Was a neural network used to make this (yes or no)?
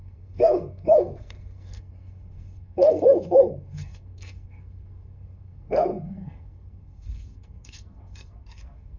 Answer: yes